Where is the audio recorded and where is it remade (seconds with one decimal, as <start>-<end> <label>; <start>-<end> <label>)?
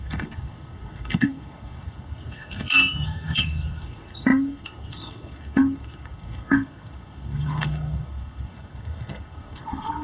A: 0.0-10.0 remade